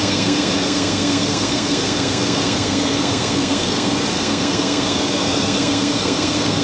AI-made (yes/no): yes